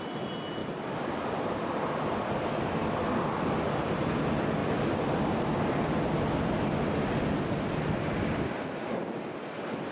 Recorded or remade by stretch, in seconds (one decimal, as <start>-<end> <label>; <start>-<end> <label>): 0.0-0.6 recorded; 0.6-1.7 remade; 1.7-9.9 recorded